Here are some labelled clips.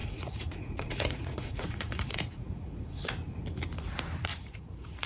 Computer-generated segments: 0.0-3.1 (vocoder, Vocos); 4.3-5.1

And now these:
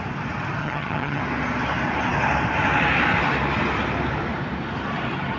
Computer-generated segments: 0.6-1.2 (vocoder, HiFi-GAN)

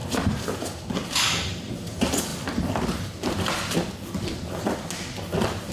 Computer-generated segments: none

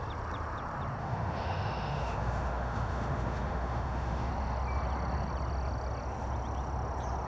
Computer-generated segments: 1.0-4.3 (autoencoder, DAC-VAE)

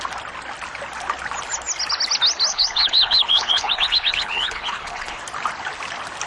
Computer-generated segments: 2.5-5.2 (codec, HILCodec)